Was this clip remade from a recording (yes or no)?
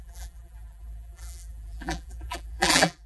yes